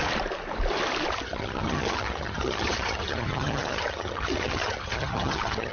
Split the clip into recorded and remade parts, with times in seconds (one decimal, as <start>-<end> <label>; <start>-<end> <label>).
0.0-1.1 recorded; 1.1-5.7 remade